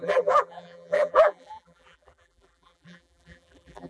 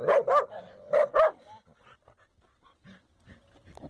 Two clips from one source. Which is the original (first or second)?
second